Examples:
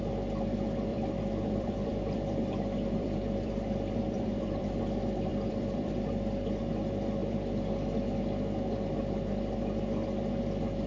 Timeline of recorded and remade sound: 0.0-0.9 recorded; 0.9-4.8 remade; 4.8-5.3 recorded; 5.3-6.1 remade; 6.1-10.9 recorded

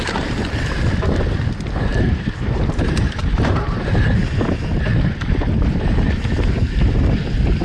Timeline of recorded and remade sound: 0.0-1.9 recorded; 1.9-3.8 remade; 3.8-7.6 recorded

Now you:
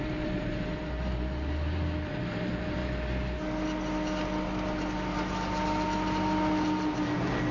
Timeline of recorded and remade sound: 0.0-2.8 remade; 2.8-7.5 recorded

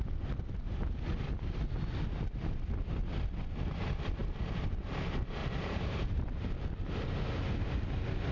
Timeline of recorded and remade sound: 0.0-5.4 recorded; 5.4-6.3 remade; 6.3-8.3 recorded